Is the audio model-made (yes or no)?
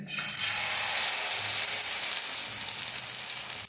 no